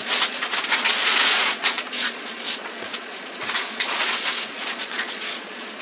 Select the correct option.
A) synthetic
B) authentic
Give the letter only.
A